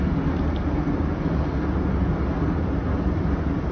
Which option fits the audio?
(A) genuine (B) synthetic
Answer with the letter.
A